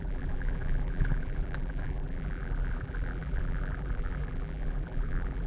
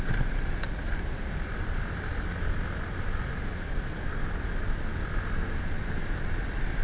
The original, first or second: second